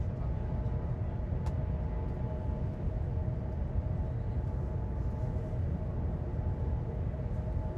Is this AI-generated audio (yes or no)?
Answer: no